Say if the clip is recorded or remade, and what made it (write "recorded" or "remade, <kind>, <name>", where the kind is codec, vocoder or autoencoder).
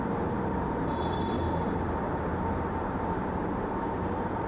remade, vocoder, BigVGAN v2